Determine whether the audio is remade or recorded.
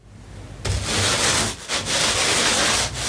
recorded